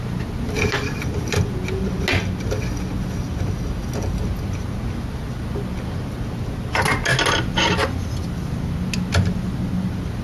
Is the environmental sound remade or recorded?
recorded